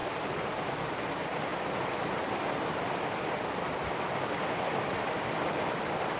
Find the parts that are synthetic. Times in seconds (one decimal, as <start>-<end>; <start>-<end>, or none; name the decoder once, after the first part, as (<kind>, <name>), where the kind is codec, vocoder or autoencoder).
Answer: 0.0-6.2 (vocoder, BigVGAN v2)